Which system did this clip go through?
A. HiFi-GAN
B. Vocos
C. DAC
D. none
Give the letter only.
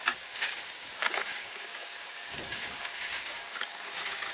C